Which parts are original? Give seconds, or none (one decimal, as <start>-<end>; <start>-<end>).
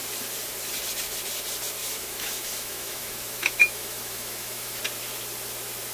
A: 0.0-1.8; 4.8-5.9